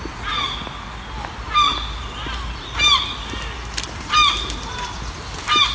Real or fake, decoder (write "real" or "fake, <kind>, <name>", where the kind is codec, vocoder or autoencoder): real